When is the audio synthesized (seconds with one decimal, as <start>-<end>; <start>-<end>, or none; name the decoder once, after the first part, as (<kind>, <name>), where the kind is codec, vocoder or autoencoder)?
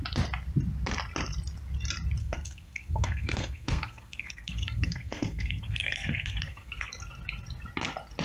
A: 2.2-6.9 (codec, SNAC)